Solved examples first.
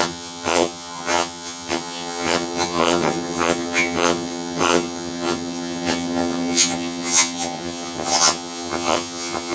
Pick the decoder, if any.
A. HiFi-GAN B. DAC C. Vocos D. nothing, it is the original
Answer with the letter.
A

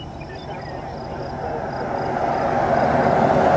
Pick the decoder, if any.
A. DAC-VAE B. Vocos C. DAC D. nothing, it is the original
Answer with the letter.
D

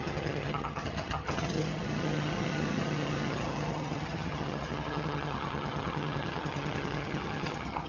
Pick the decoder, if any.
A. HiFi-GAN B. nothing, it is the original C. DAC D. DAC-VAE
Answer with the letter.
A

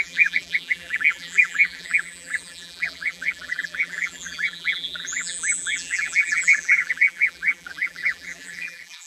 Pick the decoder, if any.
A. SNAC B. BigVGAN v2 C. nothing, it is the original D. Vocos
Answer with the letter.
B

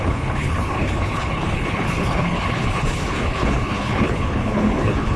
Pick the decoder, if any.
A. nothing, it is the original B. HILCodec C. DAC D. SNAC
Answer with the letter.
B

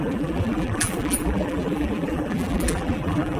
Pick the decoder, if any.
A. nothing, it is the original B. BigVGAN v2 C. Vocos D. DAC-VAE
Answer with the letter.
B